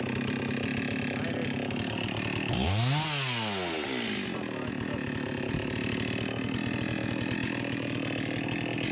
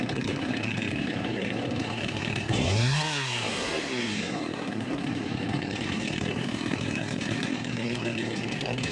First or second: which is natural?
first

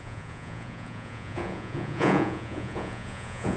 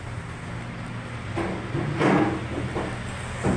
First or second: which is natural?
second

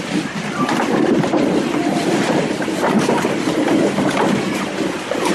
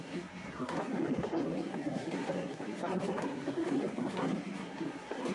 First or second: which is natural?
first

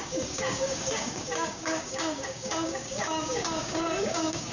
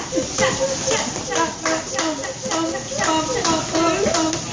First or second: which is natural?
second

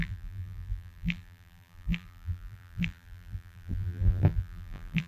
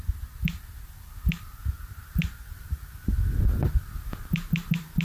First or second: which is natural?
second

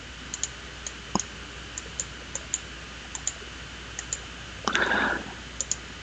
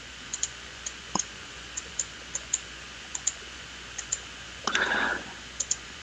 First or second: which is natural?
first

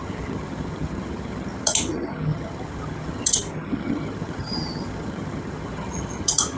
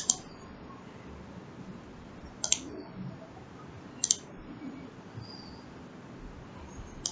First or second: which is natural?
second